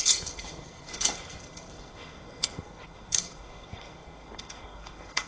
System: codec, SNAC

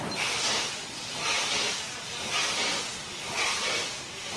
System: none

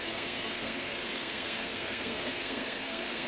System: codec, SNAC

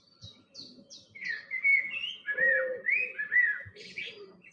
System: none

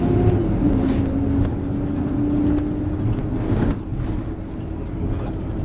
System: none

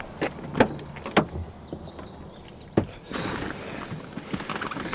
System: none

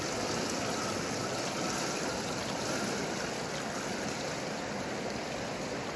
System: none